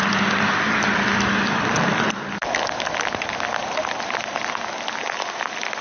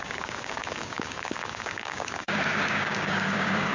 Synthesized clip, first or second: second